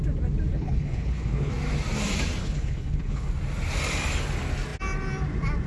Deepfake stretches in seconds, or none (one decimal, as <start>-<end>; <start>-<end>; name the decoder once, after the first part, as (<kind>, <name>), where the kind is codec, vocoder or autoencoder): 0.5-1.5 (codec, HILCodec); 2.4-3.3

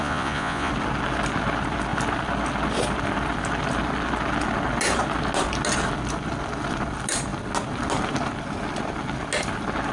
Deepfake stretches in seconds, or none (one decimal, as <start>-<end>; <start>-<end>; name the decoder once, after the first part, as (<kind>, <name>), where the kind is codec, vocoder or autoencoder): 0.0-0.7 (vocoder, Vocos)

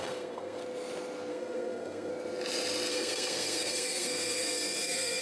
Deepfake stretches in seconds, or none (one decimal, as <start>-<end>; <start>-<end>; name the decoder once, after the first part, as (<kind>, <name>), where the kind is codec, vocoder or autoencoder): 0.0-0.6 (codec, SNAC); 1.3-2.1; 2.9-5.2

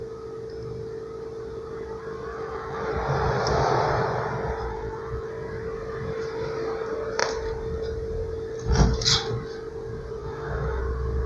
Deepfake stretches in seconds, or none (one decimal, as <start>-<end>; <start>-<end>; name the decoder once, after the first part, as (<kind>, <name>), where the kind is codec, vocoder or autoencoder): 2.3-2.9 (autoencoder, DAC-VAE); 4.7-5.3; 10.2-10.8